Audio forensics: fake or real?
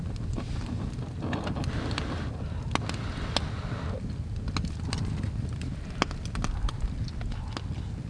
real